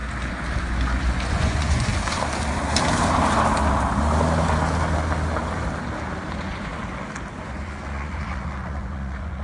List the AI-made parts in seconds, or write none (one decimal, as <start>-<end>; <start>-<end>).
0.6-1.9; 6.3-6.7; 7.3-9.4